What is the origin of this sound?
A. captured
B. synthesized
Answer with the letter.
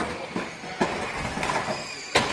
A